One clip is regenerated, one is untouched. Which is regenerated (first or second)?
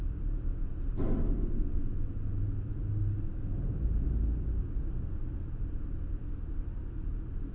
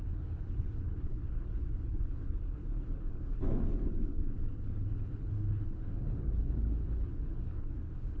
second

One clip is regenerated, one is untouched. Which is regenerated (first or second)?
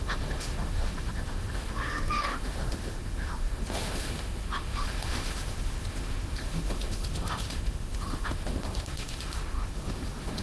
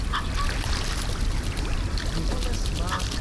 first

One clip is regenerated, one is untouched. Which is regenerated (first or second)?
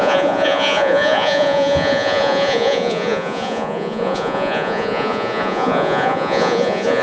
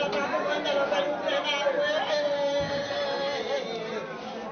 first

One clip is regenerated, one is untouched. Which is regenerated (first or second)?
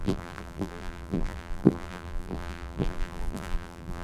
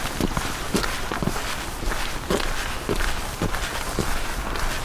first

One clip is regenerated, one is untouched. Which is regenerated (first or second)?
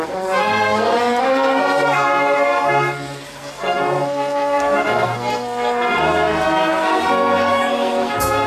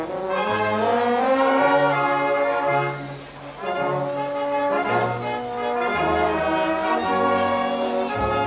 first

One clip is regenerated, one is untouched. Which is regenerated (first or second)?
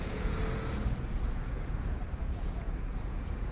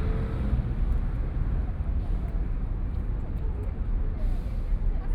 first